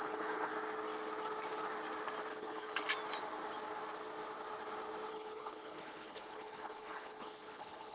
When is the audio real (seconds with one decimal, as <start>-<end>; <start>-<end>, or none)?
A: 0.5-2.3; 2.8-5.1